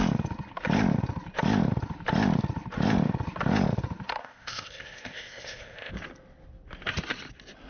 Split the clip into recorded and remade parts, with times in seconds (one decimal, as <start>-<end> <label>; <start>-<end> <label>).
0.0-4.2 recorded; 4.2-5.9 remade; 5.9-7.7 recorded